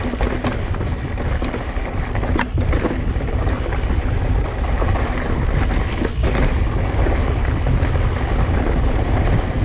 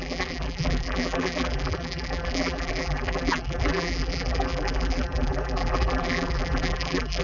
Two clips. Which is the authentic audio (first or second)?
first